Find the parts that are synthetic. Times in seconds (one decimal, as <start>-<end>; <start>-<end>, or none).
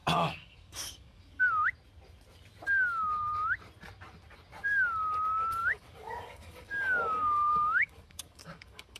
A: 0.0-1.4; 5.6-9.0